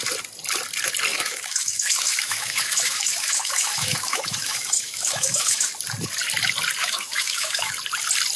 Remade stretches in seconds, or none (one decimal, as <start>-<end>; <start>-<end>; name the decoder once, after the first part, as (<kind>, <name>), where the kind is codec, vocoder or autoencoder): 1.1-5.8 (autoencoder, DAC-VAE); 6.8-7.7